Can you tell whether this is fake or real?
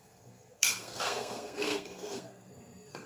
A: fake